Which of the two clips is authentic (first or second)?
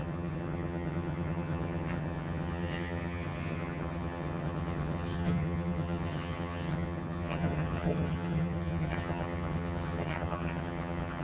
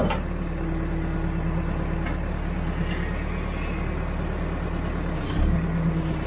second